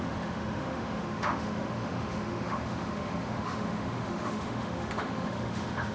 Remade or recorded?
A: remade